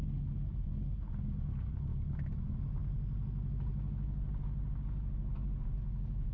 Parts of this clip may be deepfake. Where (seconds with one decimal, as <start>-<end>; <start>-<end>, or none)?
none